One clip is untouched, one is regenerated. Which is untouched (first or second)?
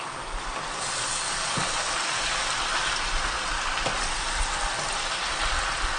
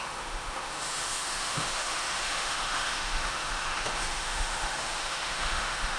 first